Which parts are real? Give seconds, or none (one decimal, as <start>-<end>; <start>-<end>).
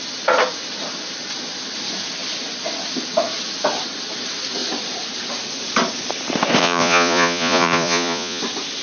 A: 0.0-6.6; 8.4-8.8